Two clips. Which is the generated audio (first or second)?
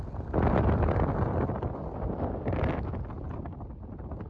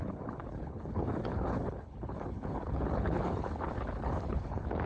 second